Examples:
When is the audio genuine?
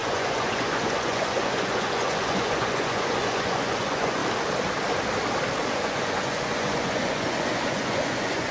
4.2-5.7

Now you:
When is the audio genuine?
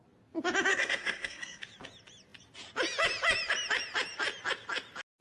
0.0-0.7; 1.6-5.2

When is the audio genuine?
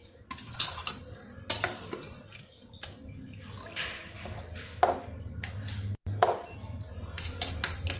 0.0-8.0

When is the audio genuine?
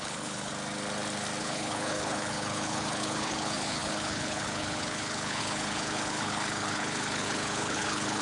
0.5-1.4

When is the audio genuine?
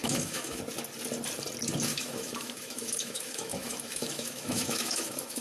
0.6-1.9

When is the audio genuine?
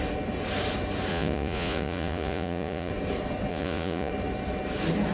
0.0-1.1; 2.9-3.5; 4.1-5.1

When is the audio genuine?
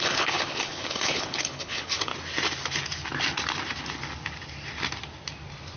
2.1-5.8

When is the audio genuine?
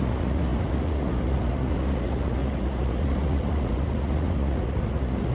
none